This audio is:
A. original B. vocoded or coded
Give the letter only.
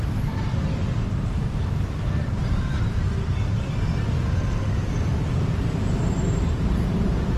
B